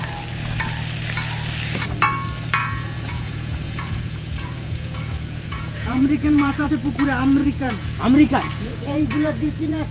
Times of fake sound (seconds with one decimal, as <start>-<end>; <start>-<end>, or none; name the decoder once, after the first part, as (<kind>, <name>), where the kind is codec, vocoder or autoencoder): 2.6-6.7 (vocoder, Vocos); 7.4-8.0; 8.5-9.9